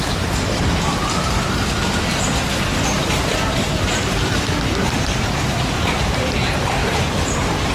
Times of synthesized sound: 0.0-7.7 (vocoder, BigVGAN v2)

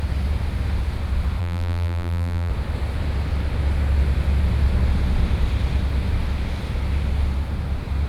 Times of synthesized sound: 1.4-2.5 (vocoder, BigVGAN v2)

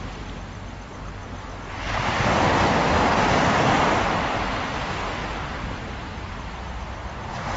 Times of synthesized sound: 5.2-6.3 (vocoder, BigVGAN v2)

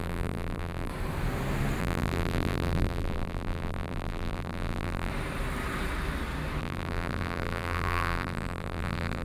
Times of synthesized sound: 0.0-0.9 (vocoder, BigVGAN v2); 1.8-5.1; 6.6-9.2

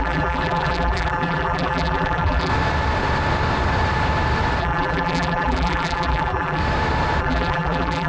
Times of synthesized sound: 0.0-2.5 (vocoder, BigVGAN v2); 4.6-6.6; 7.2-8.1